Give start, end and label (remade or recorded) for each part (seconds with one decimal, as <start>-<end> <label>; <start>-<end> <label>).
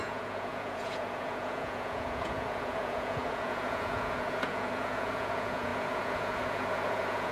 0.0-7.3 remade